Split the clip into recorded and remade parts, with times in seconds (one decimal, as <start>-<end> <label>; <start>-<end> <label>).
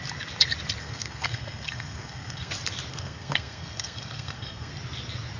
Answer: 0.0-0.8 recorded; 0.8-2.5 remade; 2.5-2.9 recorded; 2.9-4.7 remade; 4.7-5.4 recorded